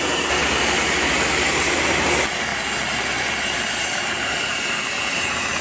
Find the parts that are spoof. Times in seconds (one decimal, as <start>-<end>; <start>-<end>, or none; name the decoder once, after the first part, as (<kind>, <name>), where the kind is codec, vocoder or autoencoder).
0.0-0.4 (vocoder, BigVGAN v2); 1.6-2.5; 3.3-5.6